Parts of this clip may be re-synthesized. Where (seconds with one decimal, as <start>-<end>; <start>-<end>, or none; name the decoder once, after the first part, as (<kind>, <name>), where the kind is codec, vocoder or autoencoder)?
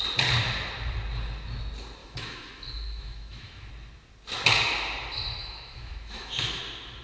2.0-3.7 (autoencoder, DAC-VAE); 5.4-6.6